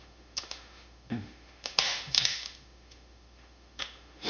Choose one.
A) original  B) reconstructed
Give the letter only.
B